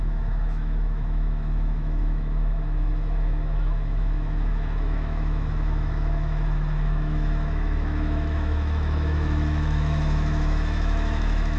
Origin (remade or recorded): remade